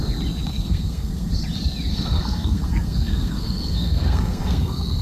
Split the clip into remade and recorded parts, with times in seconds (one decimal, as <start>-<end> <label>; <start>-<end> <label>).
0.0-0.5 recorded; 0.5-1.3 remade; 1.3-1.9 recorded; 1.9-5.0 remade